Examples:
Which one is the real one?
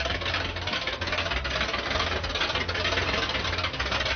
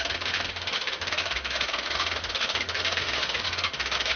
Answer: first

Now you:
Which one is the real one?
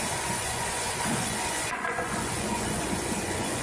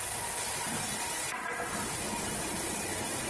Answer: second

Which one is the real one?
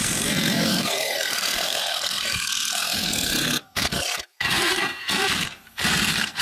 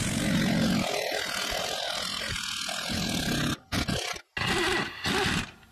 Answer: second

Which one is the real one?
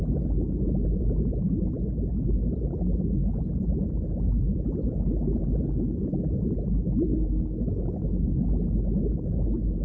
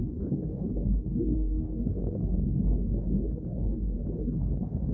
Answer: first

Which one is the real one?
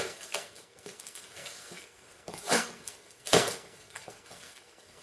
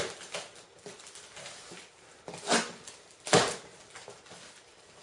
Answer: second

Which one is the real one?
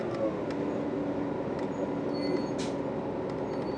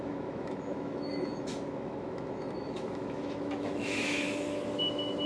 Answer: first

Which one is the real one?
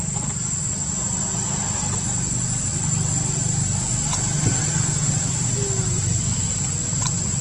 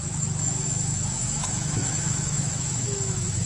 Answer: first